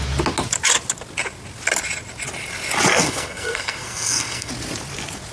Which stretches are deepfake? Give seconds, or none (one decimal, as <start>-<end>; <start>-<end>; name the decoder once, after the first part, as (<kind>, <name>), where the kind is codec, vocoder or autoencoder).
2.9-4.5 (codec, SNAC)